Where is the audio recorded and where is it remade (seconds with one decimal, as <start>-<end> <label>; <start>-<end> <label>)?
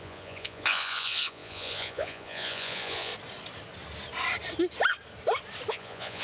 0.0-3.1 remade; 3.1-5.7 recorded; 5.7-6.2 remade